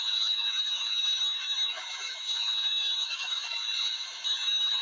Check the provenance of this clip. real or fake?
fake